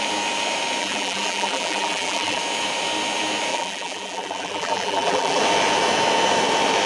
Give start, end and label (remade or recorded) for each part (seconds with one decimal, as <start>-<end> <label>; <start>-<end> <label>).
0.0-0.8 recorded; 0.8-2.4 remade; 2.4-3.5 recorded; 3.5-5.4 remade; 5.4-6.9 recorded